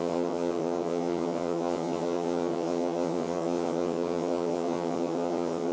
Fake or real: fake